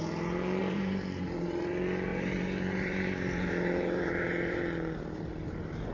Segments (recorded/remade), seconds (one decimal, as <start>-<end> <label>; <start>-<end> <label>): 0.0-0.6 recorded; 0.6-1.7 remade; 1.7-2.1 recorded; 2.1-4.6 remade; 4.6-5.9 recorded